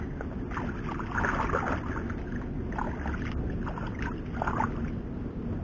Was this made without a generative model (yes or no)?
yes